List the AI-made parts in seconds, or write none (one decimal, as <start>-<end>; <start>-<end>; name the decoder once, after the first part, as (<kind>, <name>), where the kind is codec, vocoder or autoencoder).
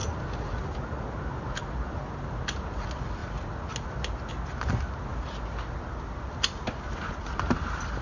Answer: none